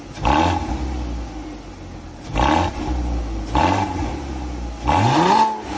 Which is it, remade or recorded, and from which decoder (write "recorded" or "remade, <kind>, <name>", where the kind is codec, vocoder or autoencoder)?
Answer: recorded